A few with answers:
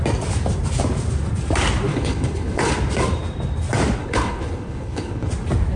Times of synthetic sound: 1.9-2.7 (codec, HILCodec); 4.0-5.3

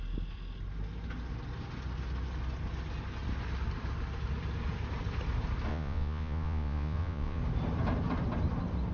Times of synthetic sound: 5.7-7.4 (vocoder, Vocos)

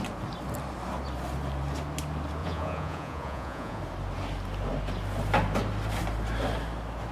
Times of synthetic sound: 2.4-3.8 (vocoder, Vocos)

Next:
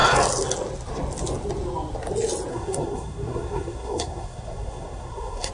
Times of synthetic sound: 2.5-5.5 (codec, SNAC)